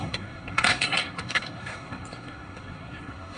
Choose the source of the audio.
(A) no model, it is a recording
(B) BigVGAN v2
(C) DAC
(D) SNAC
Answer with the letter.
D